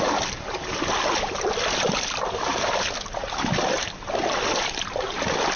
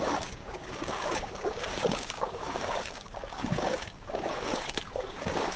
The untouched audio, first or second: first